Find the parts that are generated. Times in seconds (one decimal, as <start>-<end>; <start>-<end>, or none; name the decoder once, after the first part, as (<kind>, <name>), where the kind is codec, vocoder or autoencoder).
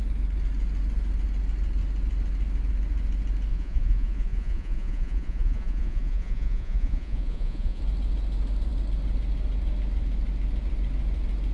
3.5-7.8 (vocoder, Vocos)